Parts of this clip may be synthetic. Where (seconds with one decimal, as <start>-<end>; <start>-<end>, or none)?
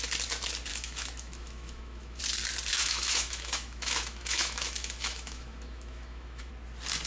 0.7-2.2; 2.7-6.5